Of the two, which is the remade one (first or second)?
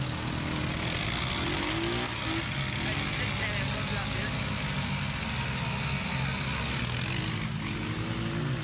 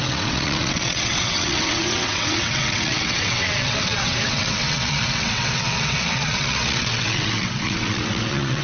second